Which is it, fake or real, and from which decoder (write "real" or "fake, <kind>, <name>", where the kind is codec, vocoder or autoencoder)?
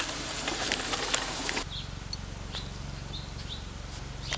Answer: real